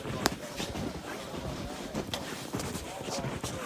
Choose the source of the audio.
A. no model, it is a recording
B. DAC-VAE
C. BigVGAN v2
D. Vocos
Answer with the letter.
C